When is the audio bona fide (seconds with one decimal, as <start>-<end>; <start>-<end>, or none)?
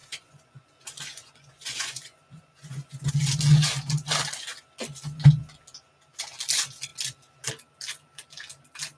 3.1-9.0